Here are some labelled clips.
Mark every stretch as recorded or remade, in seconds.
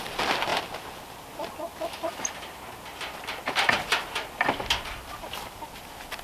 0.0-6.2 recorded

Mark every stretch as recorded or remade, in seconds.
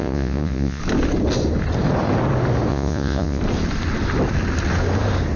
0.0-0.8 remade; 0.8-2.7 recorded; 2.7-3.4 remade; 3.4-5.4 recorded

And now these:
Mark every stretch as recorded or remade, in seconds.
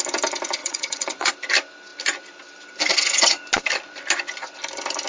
0.0-0.6 recorded; 0.6-1.3 remade; 1.3-5.1 recorded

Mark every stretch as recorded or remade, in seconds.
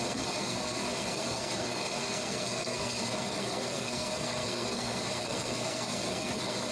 0.0-6.7 remade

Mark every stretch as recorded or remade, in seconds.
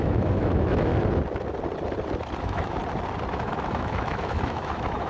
0.0-0.9 remade; 0.9-2.4 recorded; 2.4-2.8 remade; 2.8-3.3 recorded; 3.3-5.1 remade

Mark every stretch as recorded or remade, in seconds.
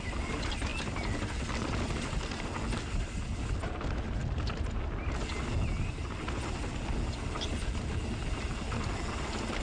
0.0-9.6 recorded